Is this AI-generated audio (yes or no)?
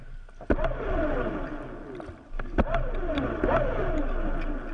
no